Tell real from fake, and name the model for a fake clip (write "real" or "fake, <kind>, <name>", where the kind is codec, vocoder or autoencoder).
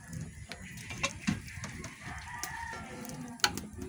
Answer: real